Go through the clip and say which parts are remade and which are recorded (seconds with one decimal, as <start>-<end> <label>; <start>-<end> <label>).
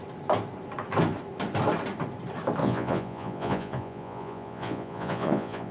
0.0-2.6 recorded; 2.6-5.7 remade